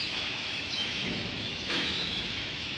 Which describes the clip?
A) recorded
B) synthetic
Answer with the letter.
B